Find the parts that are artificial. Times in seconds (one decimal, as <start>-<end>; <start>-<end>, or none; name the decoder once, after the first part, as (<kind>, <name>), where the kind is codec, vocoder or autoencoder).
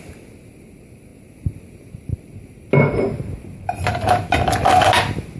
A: none